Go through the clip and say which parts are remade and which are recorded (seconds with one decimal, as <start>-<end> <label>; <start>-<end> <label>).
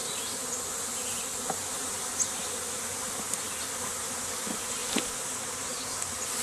0.0-6.4 recorded